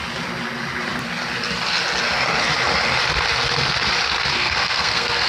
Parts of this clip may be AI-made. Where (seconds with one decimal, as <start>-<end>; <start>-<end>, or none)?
4.3-5.3